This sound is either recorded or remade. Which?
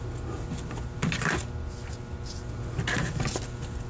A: recorded